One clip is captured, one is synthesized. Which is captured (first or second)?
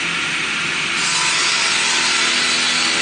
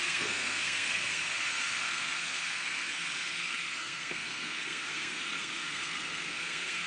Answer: first